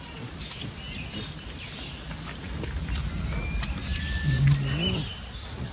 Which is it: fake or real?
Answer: real